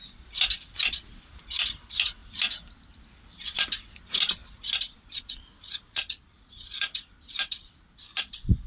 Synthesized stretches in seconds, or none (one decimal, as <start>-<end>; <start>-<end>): none